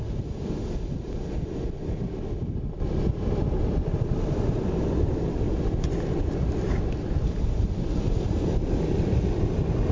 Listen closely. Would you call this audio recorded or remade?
recorded